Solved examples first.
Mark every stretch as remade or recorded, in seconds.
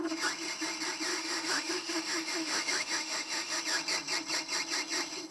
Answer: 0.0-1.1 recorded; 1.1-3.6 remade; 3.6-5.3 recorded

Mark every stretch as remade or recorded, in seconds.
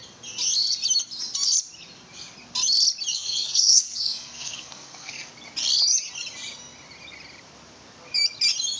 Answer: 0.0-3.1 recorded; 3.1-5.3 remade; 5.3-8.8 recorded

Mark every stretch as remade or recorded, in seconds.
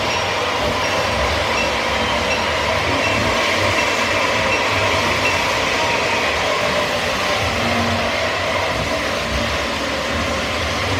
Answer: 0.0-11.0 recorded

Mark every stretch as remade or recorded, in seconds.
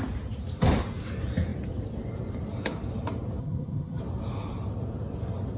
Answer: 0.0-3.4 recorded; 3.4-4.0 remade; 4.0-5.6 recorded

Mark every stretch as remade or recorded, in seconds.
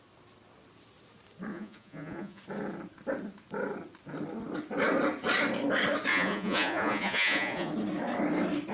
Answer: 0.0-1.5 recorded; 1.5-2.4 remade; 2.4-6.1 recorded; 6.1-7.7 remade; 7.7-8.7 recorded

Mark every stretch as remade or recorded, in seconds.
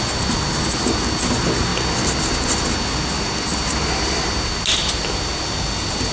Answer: 0.0-6.1 recorded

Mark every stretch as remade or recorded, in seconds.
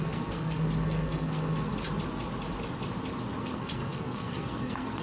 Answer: 0.0-1.7 remade; 1.7-3.4 recorded; 3.4-5.0 remade